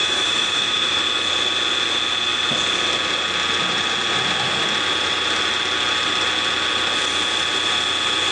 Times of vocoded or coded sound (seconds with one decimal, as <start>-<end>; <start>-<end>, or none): 0.0-1.0